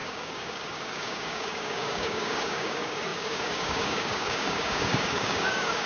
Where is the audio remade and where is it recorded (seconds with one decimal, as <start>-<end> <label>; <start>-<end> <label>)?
0.0-5.9 remade